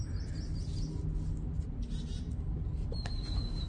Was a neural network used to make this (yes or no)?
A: no